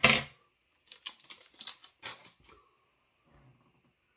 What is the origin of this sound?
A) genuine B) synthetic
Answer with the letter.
A